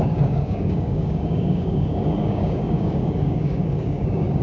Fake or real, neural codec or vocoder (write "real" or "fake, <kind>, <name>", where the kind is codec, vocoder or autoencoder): fake, codec, DAC